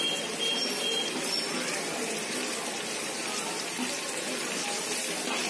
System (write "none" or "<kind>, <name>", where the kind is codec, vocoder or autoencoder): none